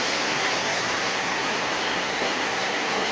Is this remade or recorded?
remade